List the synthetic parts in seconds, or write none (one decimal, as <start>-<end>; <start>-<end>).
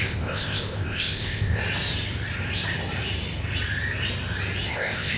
0.0-1.6; 4.7-5.2